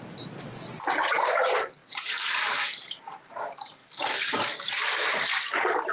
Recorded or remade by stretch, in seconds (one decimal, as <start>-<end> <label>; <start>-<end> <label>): 0.0-1.8 remade; 1.8-2.3 recorded; 2.3-3.8 remade; 3.8-4.3 recorded; 4.3-5.9 remade